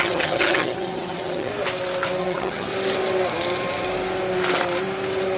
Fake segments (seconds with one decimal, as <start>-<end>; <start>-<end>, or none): 0.0-1.5; 2.2-2.7